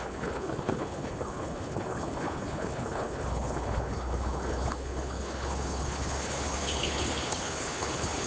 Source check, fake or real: fake